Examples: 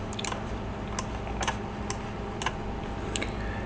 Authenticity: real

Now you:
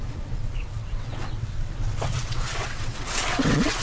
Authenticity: fake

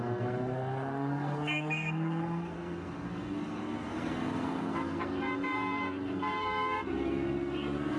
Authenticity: fake